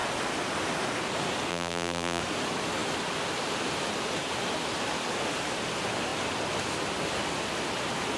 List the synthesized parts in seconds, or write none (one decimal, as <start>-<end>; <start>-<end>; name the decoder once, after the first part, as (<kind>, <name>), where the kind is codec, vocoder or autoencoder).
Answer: 1.5-2.2 (vocoder, BigVGAN v2)